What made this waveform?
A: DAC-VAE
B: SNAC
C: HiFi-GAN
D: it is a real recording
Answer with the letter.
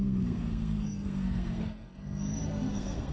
B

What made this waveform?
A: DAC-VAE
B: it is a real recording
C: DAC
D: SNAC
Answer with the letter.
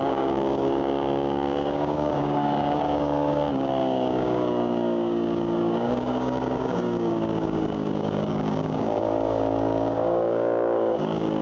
C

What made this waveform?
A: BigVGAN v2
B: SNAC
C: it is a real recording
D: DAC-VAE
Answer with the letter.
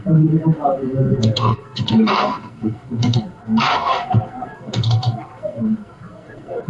B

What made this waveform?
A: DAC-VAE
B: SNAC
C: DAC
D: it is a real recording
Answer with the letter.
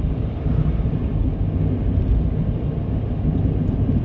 D